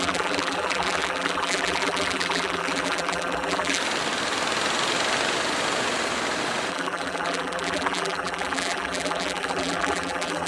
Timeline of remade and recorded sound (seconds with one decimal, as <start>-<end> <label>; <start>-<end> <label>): 0.0-3.8 remade; 3.8-6.7 recorded; 6.7-10.5 remade